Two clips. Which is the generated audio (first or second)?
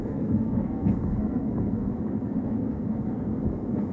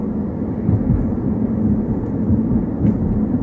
first